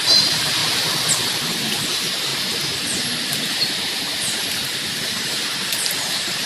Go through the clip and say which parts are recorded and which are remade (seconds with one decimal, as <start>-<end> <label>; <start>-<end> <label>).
0.0-0.6 remade; 0.6-1.1 recorded; 1.1-2.3 remade; 2.3-5.1 recorded; 5.1-6.5 remade